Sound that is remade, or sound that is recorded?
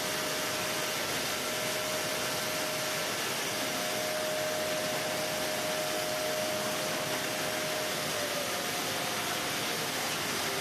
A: recorded